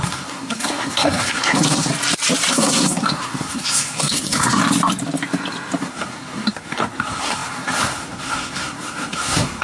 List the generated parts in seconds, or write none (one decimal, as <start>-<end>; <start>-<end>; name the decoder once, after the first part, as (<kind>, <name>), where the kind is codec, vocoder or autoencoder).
0.0-1.9 (codec, SNAC); 2.5-4.6; 5.8-9.6